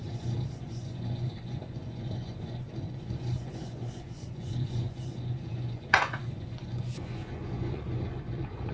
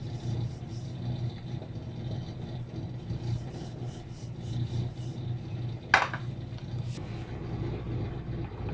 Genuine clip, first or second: second